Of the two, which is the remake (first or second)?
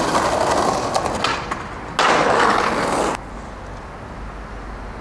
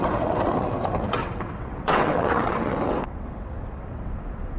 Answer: second